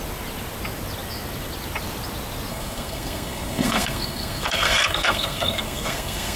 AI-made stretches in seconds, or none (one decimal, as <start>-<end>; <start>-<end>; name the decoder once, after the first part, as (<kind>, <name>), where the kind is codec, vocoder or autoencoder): 2.5-6.4 (codec, SNAC)